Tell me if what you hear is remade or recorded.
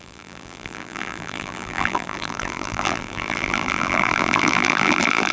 remade